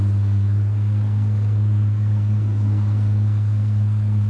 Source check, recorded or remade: remade